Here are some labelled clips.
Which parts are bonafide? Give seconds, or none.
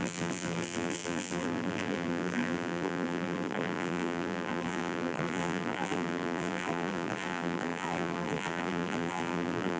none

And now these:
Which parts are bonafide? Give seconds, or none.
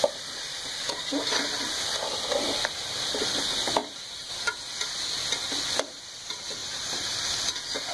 0.0-3.8; 4.3-6.6; 7.2-7.9